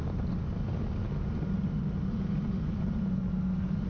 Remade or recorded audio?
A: recorded